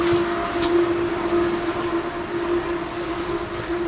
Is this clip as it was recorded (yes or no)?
yes